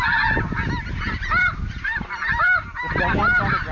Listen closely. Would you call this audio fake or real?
real